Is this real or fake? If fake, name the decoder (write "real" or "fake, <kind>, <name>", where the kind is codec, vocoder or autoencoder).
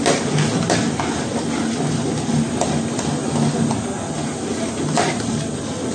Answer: real